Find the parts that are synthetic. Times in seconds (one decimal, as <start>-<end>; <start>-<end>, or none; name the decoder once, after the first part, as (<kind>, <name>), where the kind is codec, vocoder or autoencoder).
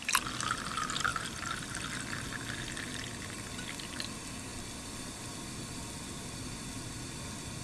none